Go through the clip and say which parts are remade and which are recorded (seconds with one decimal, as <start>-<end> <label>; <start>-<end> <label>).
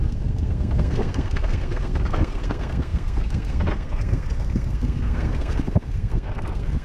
0.0-6.8 remade